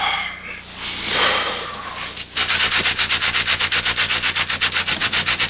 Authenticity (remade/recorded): recorded